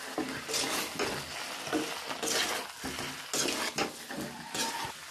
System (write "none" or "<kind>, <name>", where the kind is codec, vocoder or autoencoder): none